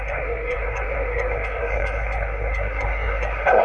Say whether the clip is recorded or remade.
remade